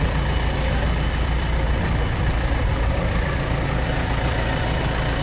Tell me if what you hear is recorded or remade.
remade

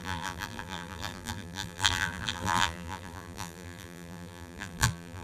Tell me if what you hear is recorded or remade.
remade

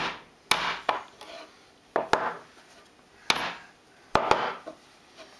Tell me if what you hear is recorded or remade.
recorded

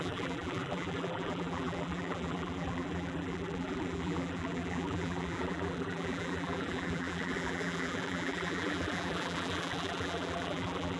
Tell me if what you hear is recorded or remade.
remade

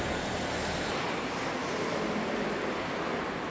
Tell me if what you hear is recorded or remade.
recorded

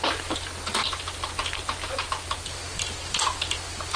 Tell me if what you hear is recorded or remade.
recorded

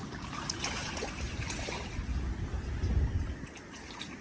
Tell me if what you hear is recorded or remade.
recorded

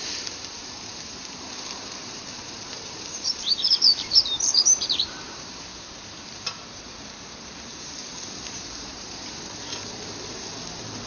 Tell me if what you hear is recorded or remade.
remade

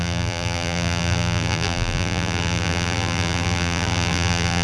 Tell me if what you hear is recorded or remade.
remade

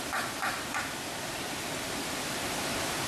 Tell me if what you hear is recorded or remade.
recorded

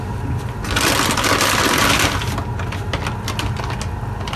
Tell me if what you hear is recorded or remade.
recorded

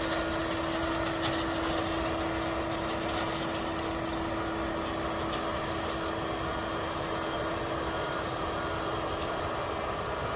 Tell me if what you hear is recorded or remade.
recorded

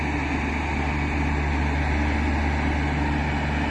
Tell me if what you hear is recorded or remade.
recorded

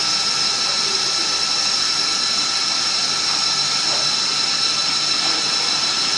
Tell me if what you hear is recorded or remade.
recorded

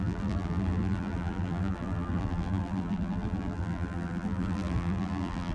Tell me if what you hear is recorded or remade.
remade